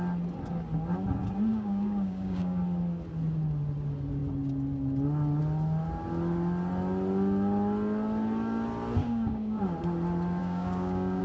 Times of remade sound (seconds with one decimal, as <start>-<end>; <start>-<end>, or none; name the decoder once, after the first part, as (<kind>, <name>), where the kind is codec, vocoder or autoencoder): 1.5-2.6 (codec, DAC); 9.0-9.6; 10.4-11.2